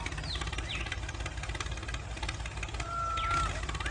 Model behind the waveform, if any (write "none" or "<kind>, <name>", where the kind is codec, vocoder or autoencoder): none